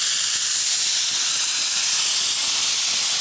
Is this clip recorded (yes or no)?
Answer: yes